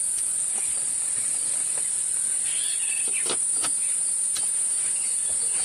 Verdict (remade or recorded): recorded